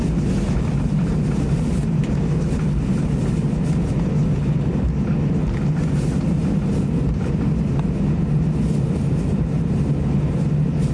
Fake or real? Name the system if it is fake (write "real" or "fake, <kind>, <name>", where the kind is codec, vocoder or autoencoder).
real